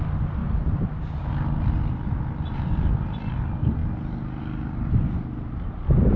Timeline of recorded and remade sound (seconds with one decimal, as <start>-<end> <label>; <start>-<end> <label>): 0.0-0.4 recorded; 0.4-1.3 remade; 1.3-6.2 recorded

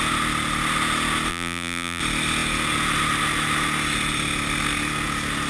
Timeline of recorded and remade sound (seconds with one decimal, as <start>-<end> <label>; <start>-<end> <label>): 0.0-1.3 recorded; 1.3-2.0 remade; 2.0-5.5 recorded

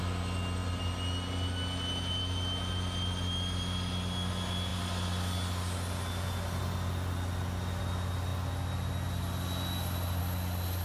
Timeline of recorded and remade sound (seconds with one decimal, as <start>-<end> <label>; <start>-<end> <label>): 0.0-10.8 recorded

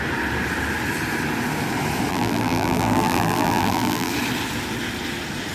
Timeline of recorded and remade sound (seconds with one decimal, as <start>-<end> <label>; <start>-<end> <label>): 0.0-2.1 recorded; 2.1-4.1 remade; 4.1-5.5 recorded